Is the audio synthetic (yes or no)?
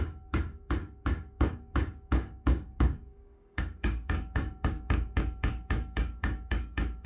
yes